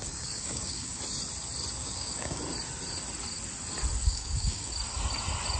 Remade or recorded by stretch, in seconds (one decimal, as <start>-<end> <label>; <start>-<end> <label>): 0.0-1.0 remade; 1.0-1.8 recorded; 1.8-2.4 remade; 2.4-4.0 recorded; 4.0-4.7 remade; 4.7-5.6 recorded